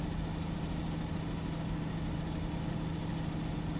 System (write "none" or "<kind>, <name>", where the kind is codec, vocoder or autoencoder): none